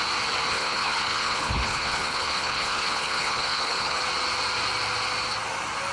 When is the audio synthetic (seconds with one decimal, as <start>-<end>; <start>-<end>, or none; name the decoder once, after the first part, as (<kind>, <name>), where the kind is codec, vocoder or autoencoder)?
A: 0.5-4.0 (codec, HILCodec)